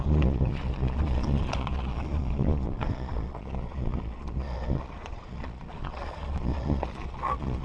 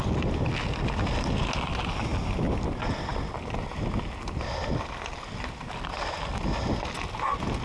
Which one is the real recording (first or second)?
second